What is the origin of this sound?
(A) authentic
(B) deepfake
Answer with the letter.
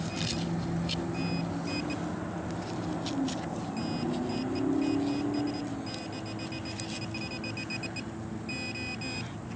A